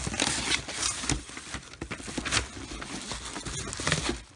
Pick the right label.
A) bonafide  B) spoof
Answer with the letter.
A